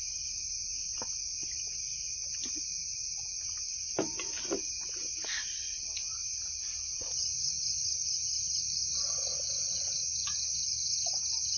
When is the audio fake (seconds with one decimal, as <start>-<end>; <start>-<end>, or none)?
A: none